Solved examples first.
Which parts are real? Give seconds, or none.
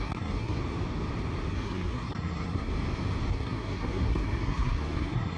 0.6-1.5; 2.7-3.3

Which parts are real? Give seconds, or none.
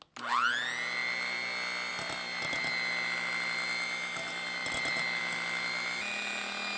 0.0-6.8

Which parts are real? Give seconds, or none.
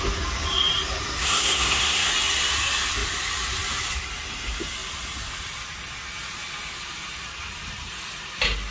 0.0-1.2; 2.1-8.7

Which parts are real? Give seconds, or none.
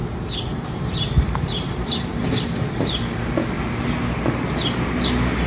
0.0-0.8; 2.1-5.5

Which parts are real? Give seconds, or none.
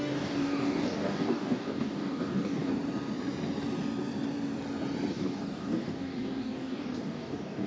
2.7-5.1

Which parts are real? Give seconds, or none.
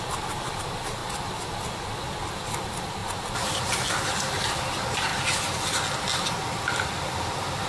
1.0-2.3; 5.1-6.6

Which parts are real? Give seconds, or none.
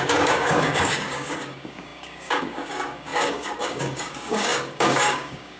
none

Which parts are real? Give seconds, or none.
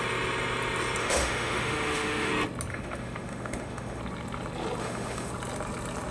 0.0-1.0; 2.3-2.7; 4.0-4.8; 5.3-6.1